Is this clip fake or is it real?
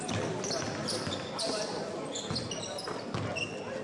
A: real